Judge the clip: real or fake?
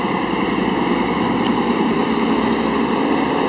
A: real